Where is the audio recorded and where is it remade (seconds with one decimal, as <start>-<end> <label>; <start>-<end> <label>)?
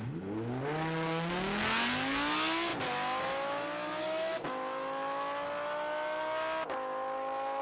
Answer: 0.0-7.6 recorded